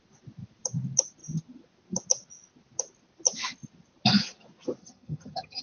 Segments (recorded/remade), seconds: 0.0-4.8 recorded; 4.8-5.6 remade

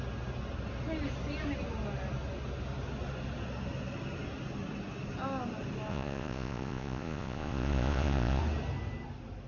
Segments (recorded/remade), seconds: 0.0-5.9 recorded; 5.9-8.4 remade; 8.4-9.5 recorded

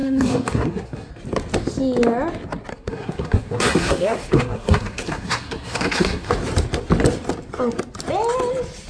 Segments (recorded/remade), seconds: 0.0-1.1 remade; 1.1-2.7 recorded; 2.7-6.3 remade; 6.3-8.9 recorded

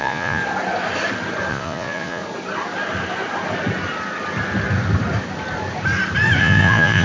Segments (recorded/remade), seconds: 0.0-0.4 remade; 0.4-1.5 recorded; 1.5-2.2 remade; 2.2-6.4 recorded; 6.4-7.0 remade

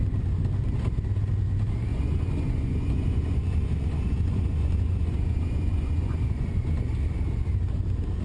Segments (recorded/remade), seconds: 0.0-1.9 recorded; 1.9-6.8 remade; 6.8-8.2 recorded

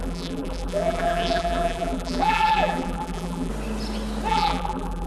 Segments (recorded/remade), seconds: 0.0-3.5 remade; 3.5-4.3 recorded; 4.3-5.1 remade